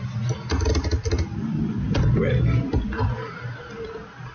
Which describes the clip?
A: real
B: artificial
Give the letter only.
A